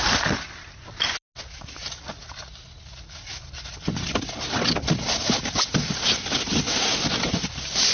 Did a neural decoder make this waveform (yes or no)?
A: no